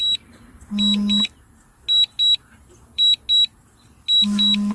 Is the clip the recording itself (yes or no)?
yes